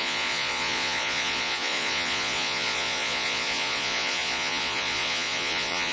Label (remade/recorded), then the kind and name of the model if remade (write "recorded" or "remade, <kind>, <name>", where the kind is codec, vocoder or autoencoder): remade, vocoder, Vocos